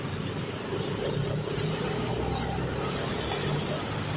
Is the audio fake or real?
real